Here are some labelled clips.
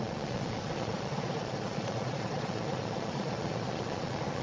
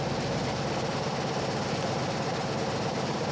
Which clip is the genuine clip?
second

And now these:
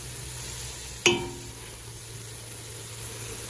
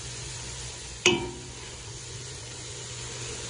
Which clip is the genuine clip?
first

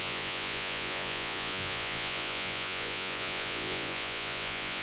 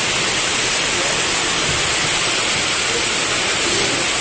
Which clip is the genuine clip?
second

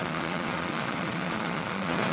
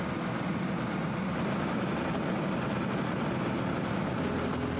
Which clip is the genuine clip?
second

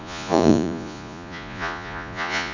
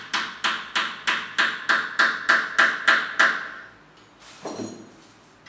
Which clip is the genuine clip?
second